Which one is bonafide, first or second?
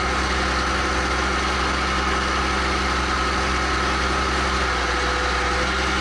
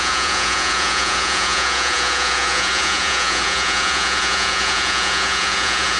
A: first